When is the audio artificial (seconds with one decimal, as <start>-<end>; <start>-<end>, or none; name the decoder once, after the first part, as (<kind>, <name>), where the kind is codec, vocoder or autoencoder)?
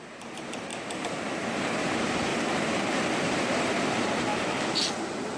0.0-0.7 (vocoder, BigVGAN v2); 1.8-2.3; 2.9-4.3